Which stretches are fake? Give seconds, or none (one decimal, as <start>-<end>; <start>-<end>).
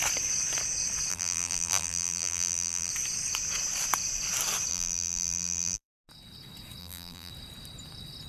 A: 1.1-2.9; 4.7-6.0; 6.8-7.3